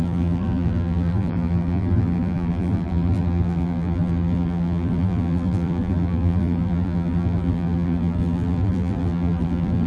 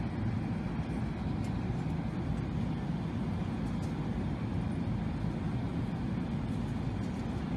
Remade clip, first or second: first